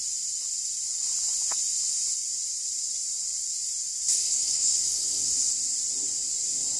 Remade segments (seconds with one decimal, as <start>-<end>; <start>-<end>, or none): 4.1-5.3